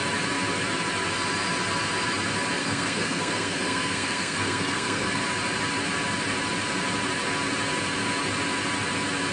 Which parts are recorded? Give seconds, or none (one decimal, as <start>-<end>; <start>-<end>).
0.0-2.6; 5.2-9.3